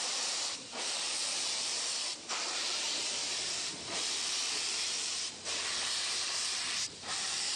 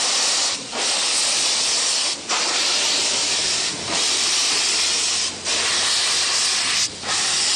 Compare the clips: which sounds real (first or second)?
second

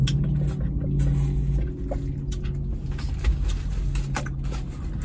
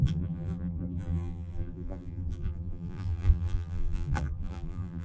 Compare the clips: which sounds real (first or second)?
first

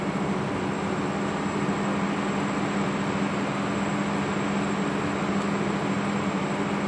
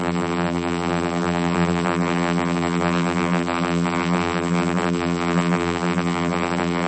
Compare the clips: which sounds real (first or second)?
first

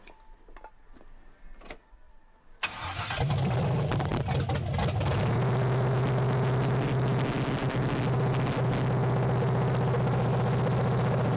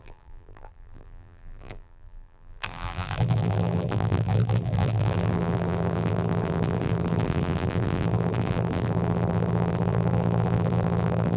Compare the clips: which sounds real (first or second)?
first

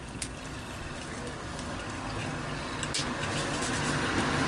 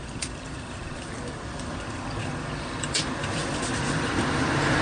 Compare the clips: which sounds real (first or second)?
first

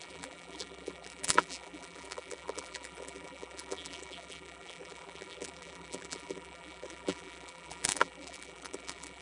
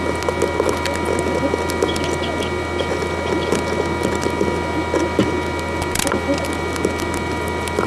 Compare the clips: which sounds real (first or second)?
second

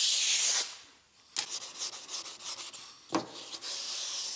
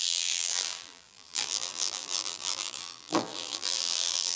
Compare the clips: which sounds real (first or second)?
first